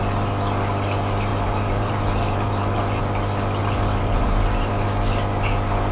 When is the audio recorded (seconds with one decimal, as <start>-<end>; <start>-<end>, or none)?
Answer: 0.0-1.3; 3.0-3.6; 4.7-5.9